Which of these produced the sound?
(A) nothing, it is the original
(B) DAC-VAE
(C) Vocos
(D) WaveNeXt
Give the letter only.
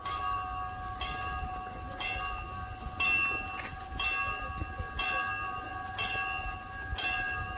A